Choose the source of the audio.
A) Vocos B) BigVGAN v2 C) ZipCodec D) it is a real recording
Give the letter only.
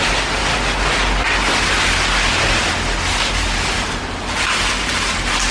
D